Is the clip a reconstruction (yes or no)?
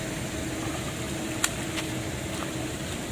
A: yes